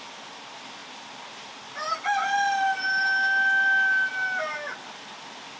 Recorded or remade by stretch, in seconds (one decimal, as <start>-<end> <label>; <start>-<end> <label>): 0.0-5.6 recorded